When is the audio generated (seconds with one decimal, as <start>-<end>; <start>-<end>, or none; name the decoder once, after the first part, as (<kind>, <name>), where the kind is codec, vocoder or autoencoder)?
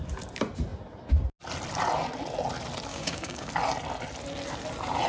2.9-3.5 (codec, DAC)